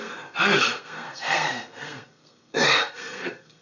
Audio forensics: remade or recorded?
remade